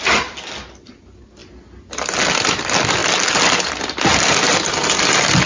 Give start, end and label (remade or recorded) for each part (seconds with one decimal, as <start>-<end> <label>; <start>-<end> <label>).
0.0-5.5 recorded